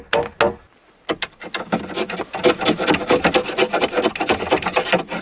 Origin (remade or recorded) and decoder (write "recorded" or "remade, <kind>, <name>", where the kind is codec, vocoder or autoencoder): recorded